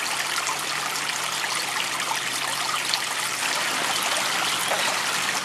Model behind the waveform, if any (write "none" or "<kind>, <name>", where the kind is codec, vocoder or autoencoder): none